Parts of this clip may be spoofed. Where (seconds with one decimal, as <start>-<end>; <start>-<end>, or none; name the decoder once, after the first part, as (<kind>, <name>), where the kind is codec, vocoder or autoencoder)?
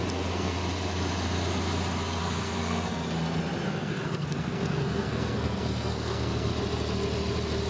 0.0-0.6 (codec, SNAC); 2.2-3.0; 3.8-6.5